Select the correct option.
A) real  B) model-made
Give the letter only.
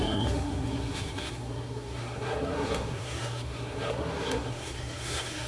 B